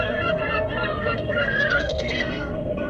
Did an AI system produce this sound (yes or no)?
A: yes